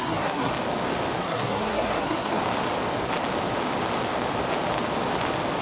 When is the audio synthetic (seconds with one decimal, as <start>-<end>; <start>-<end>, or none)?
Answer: 0.0-0.5; 1.2-2.4